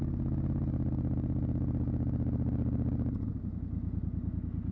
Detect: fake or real real